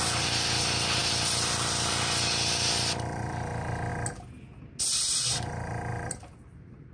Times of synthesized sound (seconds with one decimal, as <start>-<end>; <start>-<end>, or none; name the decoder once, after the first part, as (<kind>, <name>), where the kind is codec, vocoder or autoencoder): 5.9-6.9 (vocoder, BigVGAN v2)